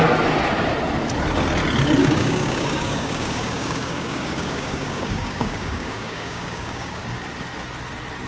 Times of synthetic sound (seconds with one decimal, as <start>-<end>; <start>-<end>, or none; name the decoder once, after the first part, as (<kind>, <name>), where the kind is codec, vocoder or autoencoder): 2.0-7.0 (codec, DAC)